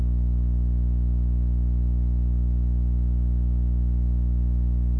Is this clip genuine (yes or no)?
yes